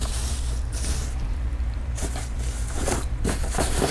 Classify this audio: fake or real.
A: fake